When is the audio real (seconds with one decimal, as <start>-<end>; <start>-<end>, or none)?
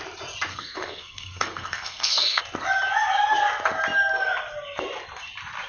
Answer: 0.0-0.5; 2.4-5.7